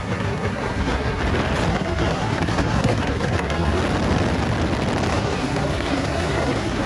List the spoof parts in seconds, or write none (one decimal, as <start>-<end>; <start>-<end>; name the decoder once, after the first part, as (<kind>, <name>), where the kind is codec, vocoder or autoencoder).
0.0-1.2 (codec, SNAC); 1.7-3.8; 5.1-6.9